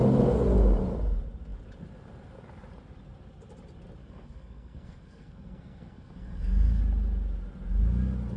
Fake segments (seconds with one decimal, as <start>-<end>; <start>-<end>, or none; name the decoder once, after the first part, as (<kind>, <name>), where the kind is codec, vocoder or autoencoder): 4.0-6.8 (codec, SNAC)